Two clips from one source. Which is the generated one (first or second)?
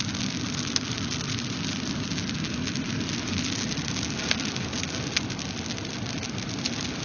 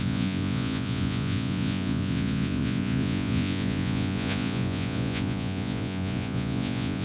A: second